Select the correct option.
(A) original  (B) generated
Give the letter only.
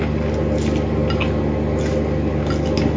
A